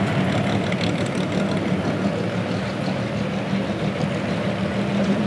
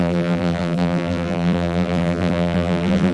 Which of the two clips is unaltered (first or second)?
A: first